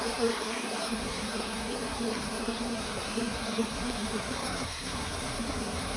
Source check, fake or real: fake